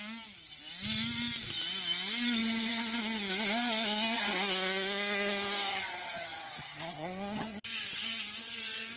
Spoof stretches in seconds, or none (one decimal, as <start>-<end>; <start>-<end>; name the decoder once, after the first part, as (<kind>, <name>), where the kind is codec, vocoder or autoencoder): 2.4-3.3 (vocoder, HiFi-GAN); 5.7-9.0